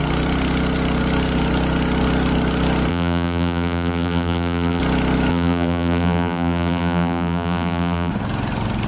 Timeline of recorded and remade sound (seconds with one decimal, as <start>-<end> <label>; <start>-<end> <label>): 0.0-2.9 recorded; 2.9-4.8 remade; 4.8-5.3 recorded; 5.3-8.1 remade; 8.1-8.9 recorded